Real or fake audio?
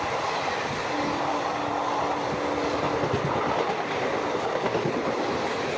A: real